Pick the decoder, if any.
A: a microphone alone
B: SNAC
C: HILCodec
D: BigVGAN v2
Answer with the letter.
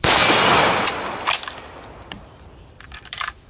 D